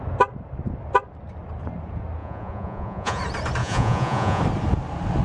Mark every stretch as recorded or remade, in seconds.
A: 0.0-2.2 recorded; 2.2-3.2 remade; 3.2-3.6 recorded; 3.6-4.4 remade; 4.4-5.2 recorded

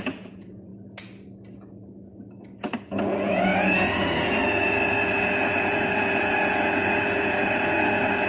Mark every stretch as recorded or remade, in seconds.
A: 0.0-0.7 remade; 0.7-2.8 recorded; 2.8-8.3 remade

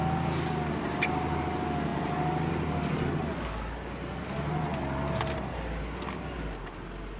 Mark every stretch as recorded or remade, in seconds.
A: 0.0-7.2 recorded

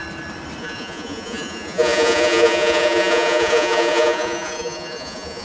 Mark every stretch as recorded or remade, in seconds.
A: 0.0-0.6 recorded; 0.6-5.4 remade

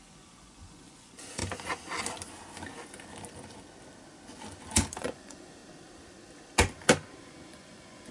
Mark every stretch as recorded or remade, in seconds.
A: 0.0-1.4 remade; 1.4-5.0 recorded; 5.0-5.6 remade; 5.6-7.2 recorded; 7.2-8.1 remade

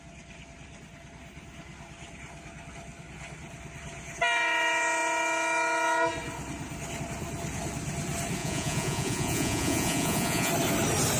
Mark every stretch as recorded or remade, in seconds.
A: 0.0-8.4 recorded; 8.4-10.5 remade; 10.5-11.2 recorded

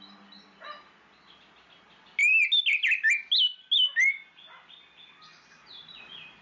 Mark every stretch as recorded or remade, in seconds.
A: 0.0-6.4 recorded

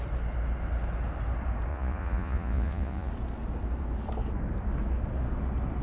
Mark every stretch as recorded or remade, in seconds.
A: 0.0-1.7 recorded; 1.7-3.1 remade; 3.1-5.8 recorded